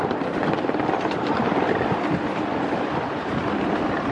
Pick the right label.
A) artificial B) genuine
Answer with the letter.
B